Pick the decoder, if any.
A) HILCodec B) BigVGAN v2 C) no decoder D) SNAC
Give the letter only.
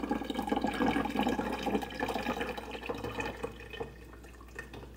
C